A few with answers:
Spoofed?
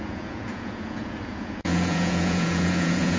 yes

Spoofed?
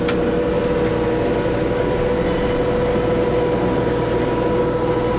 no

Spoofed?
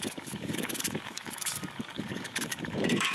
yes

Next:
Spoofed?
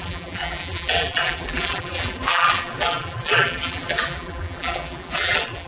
yes